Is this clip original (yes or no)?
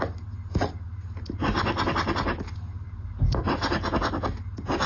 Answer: yes